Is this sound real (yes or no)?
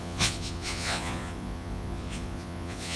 no